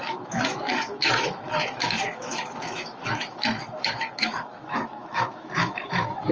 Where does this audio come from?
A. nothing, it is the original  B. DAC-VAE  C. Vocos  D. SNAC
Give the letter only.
B